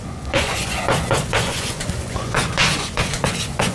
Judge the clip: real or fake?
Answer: fake